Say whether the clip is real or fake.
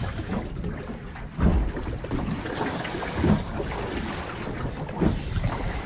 real